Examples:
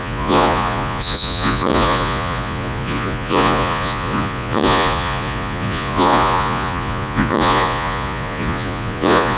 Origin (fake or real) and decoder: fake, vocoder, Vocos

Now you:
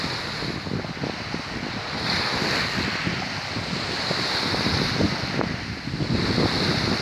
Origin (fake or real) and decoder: real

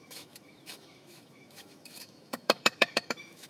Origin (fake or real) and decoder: fake, autoencoder, DAC-VAE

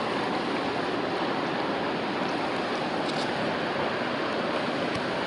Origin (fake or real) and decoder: real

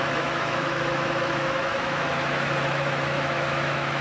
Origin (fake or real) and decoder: fake, autoencoder, DAC-VAE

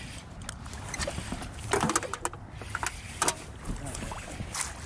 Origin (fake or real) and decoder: real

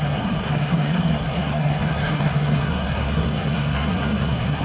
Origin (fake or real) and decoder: fake, codec, SNAC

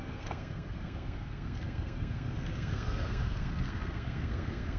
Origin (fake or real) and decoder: fake, codec, SNAC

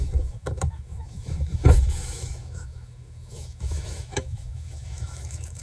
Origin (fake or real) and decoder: fake, autoencoder, DAC-VAE